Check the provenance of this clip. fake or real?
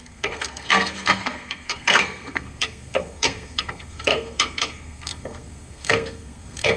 fake